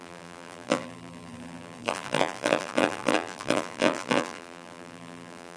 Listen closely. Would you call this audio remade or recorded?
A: remade